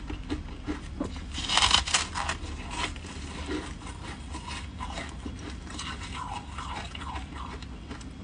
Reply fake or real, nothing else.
real